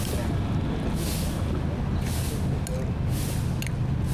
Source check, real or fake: real